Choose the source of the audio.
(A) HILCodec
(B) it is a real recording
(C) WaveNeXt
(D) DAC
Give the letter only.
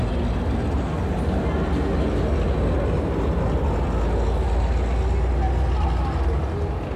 B